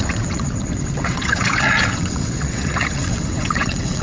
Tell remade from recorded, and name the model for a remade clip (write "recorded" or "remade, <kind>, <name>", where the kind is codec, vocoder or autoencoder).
remade, vocoder, WaveNeXt